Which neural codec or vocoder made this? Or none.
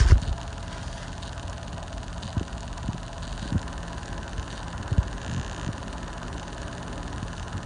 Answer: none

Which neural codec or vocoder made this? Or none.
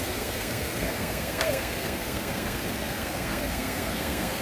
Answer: codec, SNAC